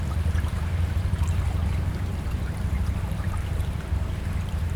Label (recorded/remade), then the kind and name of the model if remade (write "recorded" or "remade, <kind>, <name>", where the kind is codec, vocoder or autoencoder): remade, vocoder, BigVGAN v2